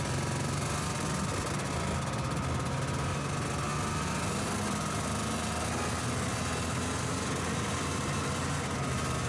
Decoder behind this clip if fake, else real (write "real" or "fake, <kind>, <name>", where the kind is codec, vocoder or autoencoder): real